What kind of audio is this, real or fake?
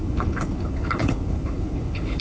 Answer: fake